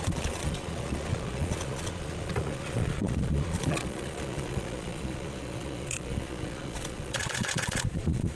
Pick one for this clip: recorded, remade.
remade